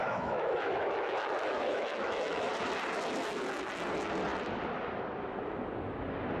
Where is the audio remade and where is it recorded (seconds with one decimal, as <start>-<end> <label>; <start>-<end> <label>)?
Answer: 0.0-2.5 remade; 2.5-6.4 recorded